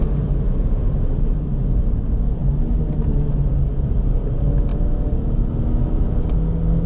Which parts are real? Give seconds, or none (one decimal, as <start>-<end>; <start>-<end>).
0.0-6.9